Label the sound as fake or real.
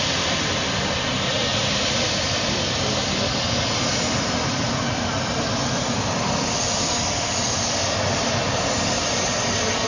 real